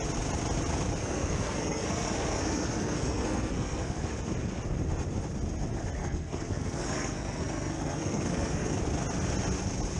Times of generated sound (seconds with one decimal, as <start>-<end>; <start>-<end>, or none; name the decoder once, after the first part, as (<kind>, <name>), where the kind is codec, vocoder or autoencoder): 1.0-4.1 (codec, SNAC); 6.0-8.8